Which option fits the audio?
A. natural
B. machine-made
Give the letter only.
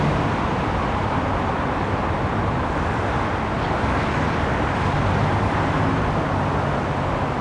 A